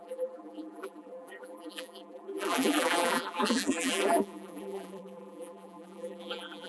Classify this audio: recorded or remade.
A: remade